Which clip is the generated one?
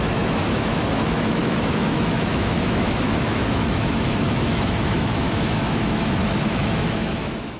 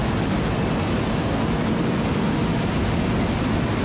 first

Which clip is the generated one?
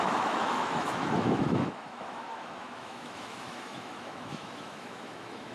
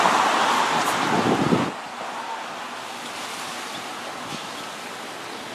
first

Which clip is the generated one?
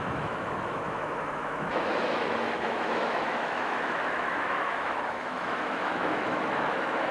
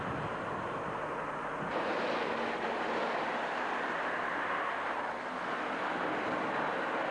first